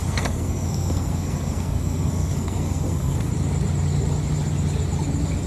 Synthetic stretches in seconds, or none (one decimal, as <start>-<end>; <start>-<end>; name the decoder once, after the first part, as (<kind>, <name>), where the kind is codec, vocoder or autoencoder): 0.0-3.3 (codec, SNAC)